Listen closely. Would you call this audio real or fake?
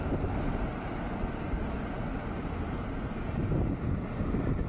real